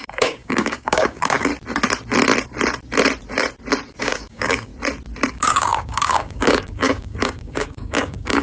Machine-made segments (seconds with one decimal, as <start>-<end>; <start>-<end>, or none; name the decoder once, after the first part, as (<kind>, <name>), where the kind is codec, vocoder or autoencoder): 0.0-1.5 (codec, DAC); 4.0-4.7; 5.3-8.4